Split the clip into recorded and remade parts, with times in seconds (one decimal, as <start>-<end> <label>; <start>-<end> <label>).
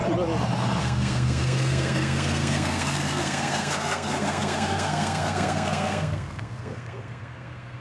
0.0-0.8 recorded; 0.8-7.8 remade